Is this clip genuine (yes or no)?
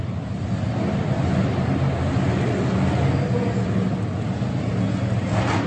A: yes